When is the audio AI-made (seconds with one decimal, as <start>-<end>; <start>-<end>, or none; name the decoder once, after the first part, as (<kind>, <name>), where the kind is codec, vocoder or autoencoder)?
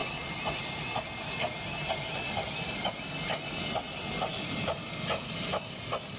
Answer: none